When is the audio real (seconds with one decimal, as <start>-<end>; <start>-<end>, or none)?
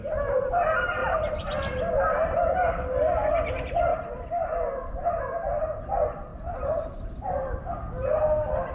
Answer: 0.0-1.0; 2.4-3.9; 5.2-6.3; 7.7-8.7